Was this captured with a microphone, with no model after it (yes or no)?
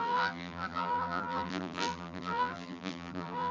no